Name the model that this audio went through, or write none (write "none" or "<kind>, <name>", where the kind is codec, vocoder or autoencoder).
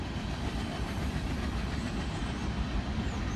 vocoder, BigVGAN v2